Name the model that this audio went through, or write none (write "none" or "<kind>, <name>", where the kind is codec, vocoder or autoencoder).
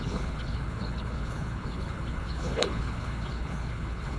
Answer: codec, HILCodec